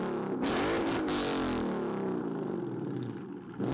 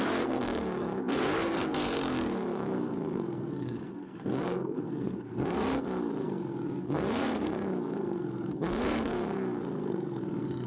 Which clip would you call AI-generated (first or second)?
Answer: second